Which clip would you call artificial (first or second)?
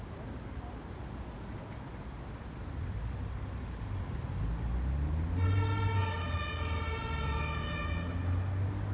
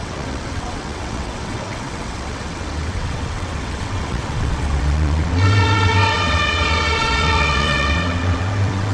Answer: second